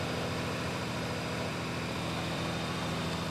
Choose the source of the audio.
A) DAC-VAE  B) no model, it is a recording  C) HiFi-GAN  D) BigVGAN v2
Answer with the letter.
D